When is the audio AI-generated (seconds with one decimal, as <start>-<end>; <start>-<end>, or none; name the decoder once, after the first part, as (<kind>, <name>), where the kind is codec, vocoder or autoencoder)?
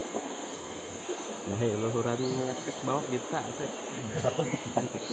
0.0-1.6 (codec, SNAC); 2.4-2.8; 3.9-5.1